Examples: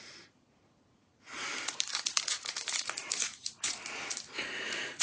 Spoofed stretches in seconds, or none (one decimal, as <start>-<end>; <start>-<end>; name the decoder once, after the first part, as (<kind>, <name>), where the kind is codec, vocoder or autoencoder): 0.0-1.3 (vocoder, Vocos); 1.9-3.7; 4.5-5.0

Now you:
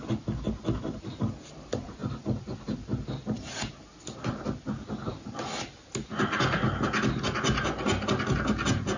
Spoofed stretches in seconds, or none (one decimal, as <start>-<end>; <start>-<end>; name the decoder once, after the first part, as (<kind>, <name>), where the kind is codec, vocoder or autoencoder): none

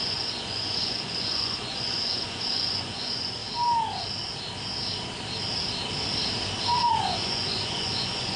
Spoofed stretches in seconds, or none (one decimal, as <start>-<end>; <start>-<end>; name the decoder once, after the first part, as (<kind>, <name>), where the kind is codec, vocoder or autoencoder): 0.0-3.4 (vocoder, Vocos); 6.9-8.4

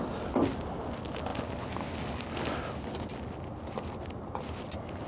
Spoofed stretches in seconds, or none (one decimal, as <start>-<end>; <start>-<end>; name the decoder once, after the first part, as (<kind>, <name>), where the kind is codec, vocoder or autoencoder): none

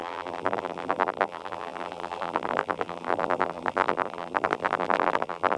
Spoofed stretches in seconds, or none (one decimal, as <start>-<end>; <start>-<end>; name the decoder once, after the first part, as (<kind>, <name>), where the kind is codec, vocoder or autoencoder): 0.0-5.6 (vocoder, BigVGAN v2)

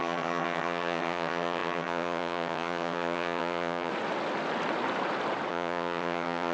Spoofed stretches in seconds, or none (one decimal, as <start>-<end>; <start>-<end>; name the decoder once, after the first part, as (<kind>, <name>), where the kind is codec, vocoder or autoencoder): 0.0-3.9 (vocoder, HiFi-GAN); 5.5-6.5

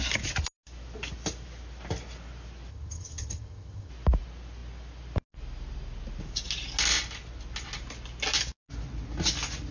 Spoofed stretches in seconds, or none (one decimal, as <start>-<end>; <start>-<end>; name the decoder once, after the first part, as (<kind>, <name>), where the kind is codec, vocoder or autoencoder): 2.7-3.9 (vocoder, HiFi-GAN)

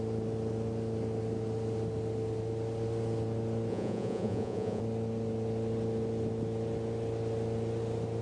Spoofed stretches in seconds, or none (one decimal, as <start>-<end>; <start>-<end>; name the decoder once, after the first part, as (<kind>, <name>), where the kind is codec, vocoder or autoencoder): 3.7-4.8 (vocoder, Vocos)